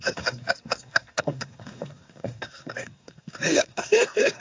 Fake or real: fake